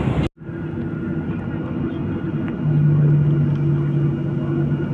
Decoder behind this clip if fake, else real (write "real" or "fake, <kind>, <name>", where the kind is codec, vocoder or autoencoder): real